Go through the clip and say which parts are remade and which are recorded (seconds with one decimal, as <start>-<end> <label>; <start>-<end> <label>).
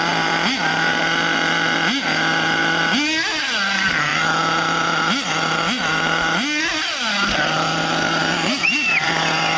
0.0-9.6 recorded